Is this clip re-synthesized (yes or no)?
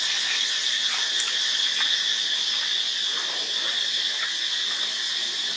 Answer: no